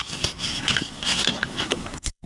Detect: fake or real fake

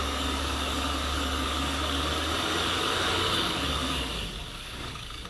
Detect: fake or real fake